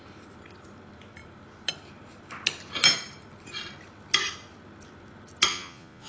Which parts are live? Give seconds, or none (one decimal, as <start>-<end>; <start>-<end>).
0.0-5.5